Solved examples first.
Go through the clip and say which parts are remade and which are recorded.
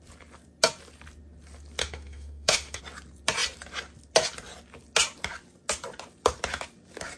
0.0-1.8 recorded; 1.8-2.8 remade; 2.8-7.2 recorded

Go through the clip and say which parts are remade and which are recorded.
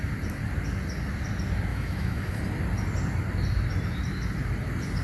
0.0-1.7 recorded; 1.7-2.4 remade; 2.4-5.0 recorded